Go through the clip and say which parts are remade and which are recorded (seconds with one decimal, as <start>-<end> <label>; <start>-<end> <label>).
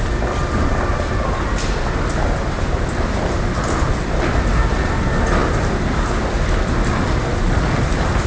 0.0-8.3 recorded